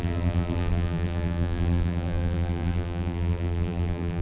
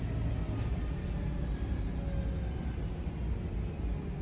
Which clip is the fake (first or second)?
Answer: first